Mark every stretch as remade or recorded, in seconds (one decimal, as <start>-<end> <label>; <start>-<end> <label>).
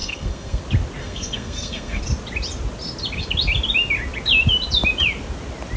0.0-0.6 remade; 0.6-1.0 recorded; 1.0-2.0 remade; 2.0-5.8 recorded